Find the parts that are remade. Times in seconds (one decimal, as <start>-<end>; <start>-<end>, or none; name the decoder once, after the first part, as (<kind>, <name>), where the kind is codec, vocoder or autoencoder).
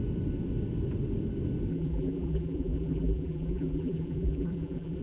1.7-5.0 (vocoder, BigVGAN v2)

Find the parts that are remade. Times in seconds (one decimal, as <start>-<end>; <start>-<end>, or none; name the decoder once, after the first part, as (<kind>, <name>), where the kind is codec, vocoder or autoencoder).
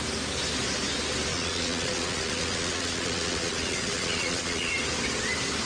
1.3-4.7 (vocoder, Vocos)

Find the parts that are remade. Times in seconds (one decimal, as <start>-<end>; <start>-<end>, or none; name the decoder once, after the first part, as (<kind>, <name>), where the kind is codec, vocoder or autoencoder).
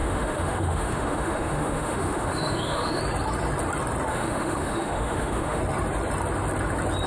0.0-3.0 (autoencoder, DAC-VAE); 4.1-5.6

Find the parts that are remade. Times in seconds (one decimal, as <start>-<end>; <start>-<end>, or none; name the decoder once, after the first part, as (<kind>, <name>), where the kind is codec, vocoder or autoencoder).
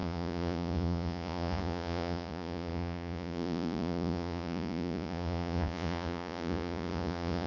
0.0-7.5 (vocoder, Vocos)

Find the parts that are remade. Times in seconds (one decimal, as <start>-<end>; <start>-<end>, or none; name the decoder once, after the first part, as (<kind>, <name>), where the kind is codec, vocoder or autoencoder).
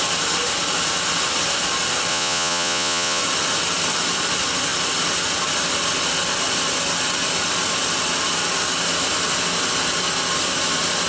2.1-3.2 (vocoder, Vocos)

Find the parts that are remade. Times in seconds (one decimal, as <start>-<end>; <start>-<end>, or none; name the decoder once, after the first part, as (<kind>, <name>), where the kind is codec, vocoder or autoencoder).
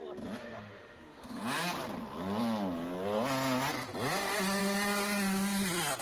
0.4-1.4 (autoencoder, DAC-VAE)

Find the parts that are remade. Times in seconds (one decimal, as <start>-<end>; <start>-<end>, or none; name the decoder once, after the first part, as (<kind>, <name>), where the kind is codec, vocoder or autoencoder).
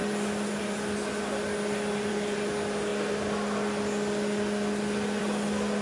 none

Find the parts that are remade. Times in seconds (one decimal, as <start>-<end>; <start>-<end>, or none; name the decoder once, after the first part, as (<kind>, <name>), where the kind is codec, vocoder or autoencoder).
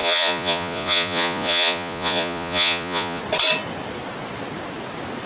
0.0-3.2 (vocoder, Vocos)